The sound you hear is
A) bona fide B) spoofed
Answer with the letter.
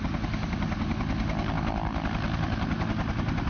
A